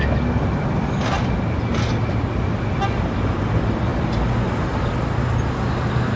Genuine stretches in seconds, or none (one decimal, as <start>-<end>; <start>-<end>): 0.0-6.2